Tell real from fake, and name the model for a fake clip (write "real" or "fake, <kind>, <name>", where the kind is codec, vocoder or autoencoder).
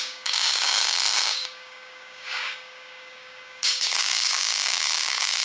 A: fake, codec, DAC